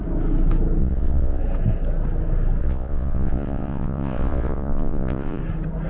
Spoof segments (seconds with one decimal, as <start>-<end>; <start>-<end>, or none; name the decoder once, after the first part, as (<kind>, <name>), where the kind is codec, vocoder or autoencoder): 0.8-1.4 (vocoder, Vocos); 2.6-5.4